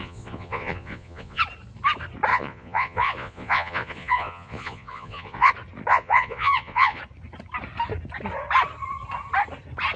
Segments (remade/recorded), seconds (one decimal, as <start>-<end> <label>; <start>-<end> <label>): 0.0-1.4 remade; 1.4-2.3 recorded; 2.3-5.5 remade; 5.5-5.9 recorded; 5.9-7.0 remade; 7.0-10.0 recorded